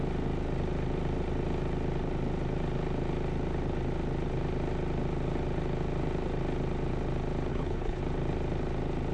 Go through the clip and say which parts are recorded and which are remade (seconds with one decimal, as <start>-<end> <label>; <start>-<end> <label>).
0.0-7.5 recorded; 7.5-8.0 remade; 8.0-9.1 recorded